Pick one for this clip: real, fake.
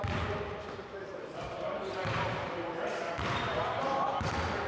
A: real